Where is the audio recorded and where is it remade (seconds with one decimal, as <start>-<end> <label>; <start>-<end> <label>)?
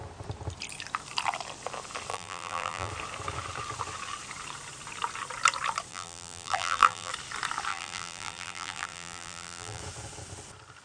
0.0-2.1 recorded; 2.1-2.9 remade; 2.9-5.9 recorded; 5.9-7.1 remade; 7.1-7.7 recorded; 7.7-9.8 remade; 9.8-10.8 recorded